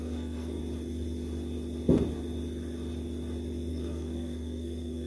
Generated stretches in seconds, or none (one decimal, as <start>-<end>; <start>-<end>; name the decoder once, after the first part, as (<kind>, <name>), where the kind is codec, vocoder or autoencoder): 0.0-0.6 (codec, SNAC); 3.7-5.1